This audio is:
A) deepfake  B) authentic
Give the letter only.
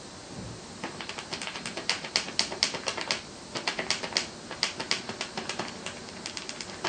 B